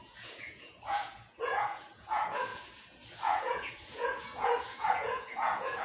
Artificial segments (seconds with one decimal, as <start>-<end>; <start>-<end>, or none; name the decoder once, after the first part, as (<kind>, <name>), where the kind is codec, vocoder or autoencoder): 0.0-5.8 (vocoder, Vocos)